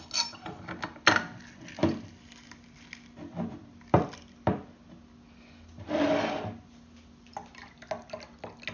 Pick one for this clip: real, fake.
real